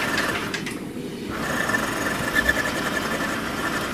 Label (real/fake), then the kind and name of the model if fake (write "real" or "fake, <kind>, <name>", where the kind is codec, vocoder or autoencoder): real